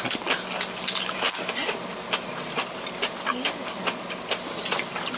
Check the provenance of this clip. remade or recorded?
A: recorded